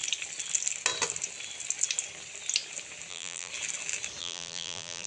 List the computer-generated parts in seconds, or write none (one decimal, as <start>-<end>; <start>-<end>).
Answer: 3.1-3.5; 4.2-5.1